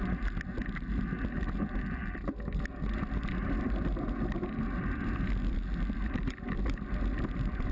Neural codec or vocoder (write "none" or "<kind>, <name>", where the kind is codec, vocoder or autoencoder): none